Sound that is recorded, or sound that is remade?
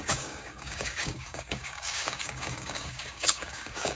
remade